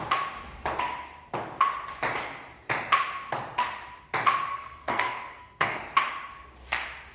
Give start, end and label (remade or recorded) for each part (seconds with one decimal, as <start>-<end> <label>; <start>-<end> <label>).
0.0-4.5 recorded; 4.5-5.8 remade; 5.8-7.1 recorded